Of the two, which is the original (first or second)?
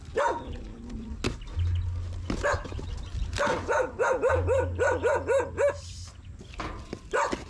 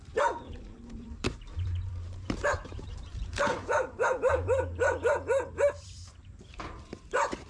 first